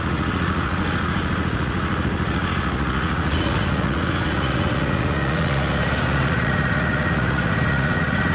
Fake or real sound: fake